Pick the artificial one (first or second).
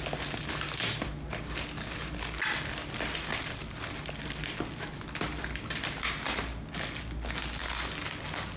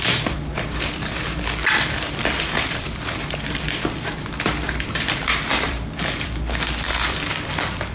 second